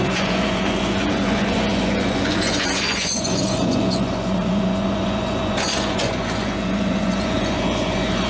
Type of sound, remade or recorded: remade